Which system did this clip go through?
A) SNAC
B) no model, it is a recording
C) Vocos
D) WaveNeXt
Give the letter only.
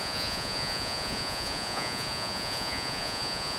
C